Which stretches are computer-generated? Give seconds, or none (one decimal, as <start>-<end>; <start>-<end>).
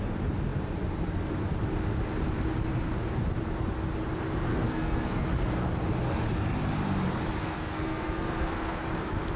4.5-5.3; 7.4-8.8